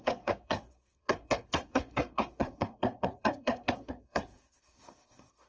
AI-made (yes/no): yes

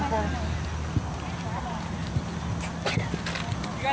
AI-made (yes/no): no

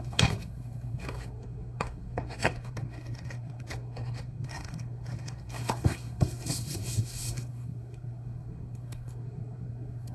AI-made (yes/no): yes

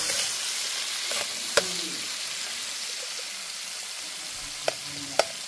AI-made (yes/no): no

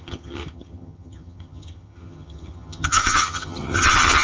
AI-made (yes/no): yes